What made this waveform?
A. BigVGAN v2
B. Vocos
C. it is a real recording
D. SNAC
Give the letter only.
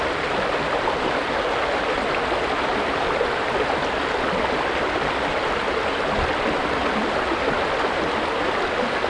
C